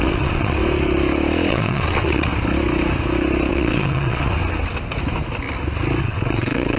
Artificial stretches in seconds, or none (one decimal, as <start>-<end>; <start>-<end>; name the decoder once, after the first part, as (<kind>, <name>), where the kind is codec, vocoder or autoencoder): 0.0-0.6 (vocoder, WaveNeXt); 1.5-2.3; 3.5-4.4; 6.0-6.8